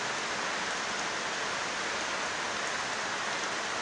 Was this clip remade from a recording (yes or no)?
no